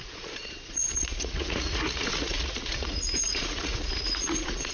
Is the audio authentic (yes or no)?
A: no